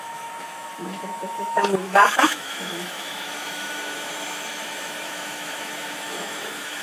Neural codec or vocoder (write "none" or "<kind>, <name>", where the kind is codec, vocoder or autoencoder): autoencoder, DAC-VAE